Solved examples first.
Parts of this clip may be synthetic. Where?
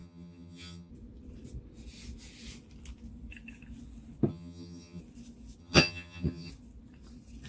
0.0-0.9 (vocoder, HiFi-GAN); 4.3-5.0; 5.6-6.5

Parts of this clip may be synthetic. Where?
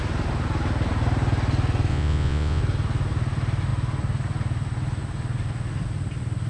1.9-2.6 (vocoder, Vocos)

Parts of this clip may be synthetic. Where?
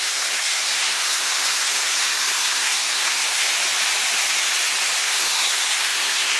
0.0-3.5 (codec, SNAC); 5.0-6.4